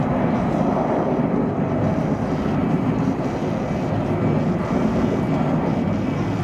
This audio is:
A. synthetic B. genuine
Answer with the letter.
B